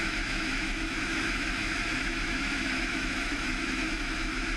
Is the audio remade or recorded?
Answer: remade